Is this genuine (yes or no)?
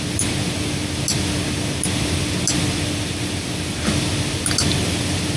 yes